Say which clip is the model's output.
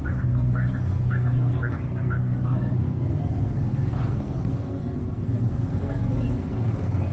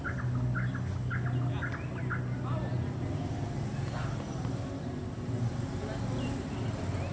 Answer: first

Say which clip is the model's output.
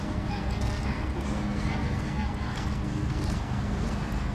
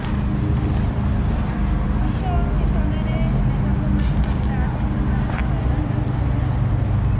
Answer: first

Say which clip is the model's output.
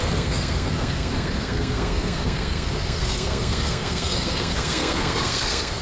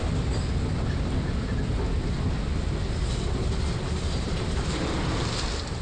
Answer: first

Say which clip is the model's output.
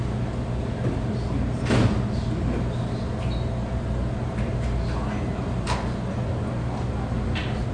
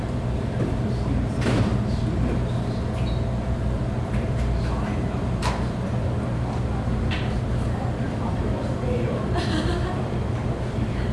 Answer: second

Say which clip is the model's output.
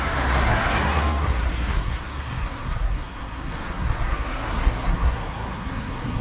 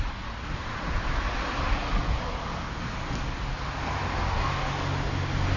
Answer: first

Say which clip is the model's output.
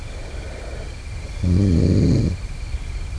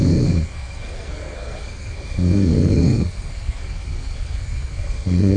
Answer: second